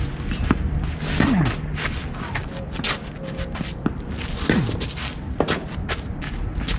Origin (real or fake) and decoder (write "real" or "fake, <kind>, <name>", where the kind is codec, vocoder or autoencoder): real